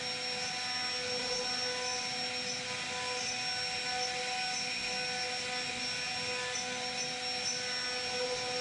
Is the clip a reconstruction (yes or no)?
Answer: no